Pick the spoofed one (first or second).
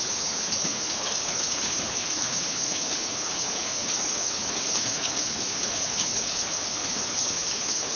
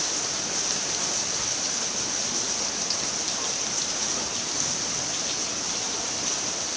first